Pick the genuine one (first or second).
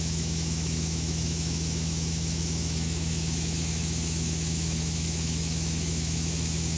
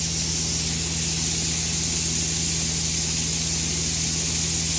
second